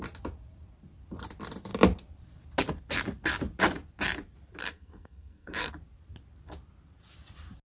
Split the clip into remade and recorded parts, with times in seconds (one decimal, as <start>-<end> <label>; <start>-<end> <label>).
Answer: 0.0-4.6 recorded; 4.6-5.7 remade; 5.7-7.8 recorded